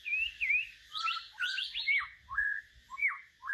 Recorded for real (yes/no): no